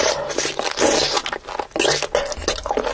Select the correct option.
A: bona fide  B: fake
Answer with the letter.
A